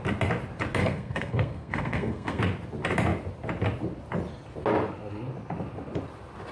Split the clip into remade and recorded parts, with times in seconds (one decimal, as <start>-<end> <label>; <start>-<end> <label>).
0.0-0.8 recorded; 0.8-2.4 remade; 2.4-6.5 recorded